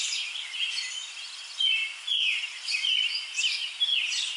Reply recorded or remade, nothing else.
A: recorded